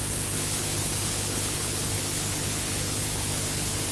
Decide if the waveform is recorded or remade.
remade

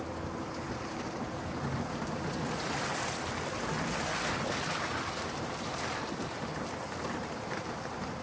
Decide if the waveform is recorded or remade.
recorded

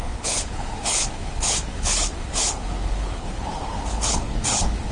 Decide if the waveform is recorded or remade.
remade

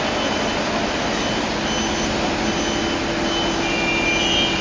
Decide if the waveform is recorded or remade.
recorded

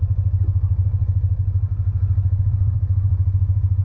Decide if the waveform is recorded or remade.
recorded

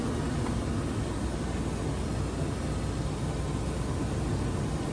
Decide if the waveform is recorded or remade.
recorded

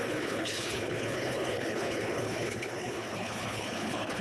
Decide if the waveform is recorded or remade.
remade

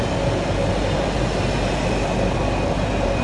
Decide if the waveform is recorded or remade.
recorded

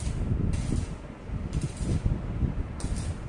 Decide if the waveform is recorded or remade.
recorded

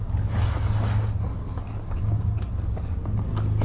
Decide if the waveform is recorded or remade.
recorded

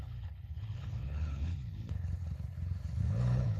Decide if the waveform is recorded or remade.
remade